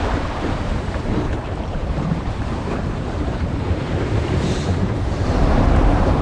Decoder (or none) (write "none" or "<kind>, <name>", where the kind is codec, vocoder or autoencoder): vocoder, BigVGAN v2